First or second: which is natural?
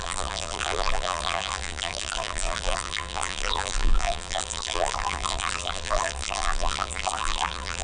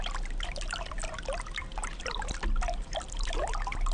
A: second